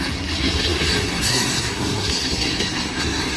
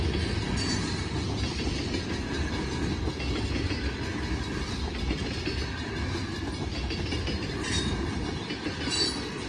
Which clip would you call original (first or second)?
second